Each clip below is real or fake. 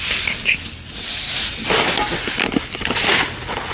real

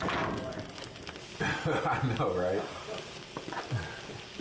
real